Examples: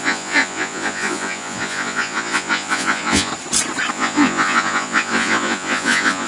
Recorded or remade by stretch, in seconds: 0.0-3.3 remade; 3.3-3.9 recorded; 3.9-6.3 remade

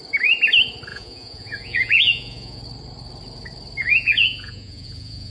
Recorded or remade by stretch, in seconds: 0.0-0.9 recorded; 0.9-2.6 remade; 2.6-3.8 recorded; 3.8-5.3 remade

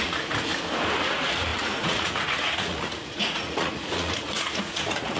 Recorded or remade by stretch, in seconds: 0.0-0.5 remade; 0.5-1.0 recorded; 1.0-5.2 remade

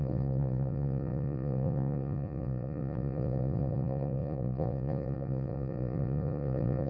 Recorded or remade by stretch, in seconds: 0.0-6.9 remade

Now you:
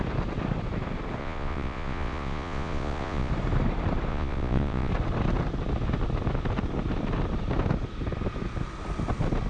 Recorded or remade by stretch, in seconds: 0.0-1.2 recorded; 1.2-3.3 remade; 3.3-4.1 recorded; 4.1-4.9 remade; 4.9-9.5 recorded

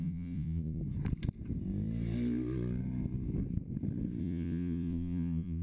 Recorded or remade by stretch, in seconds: 0.0-0.8 remade; 0.8-4.2 recorded; 4.2-5.6 remade